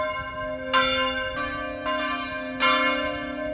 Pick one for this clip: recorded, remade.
recorded